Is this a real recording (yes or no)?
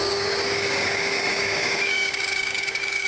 no